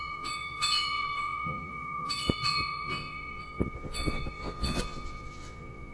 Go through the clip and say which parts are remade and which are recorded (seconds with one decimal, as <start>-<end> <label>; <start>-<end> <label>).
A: 0.0-5.9 remade